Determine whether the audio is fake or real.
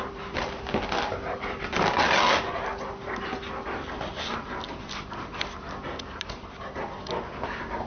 real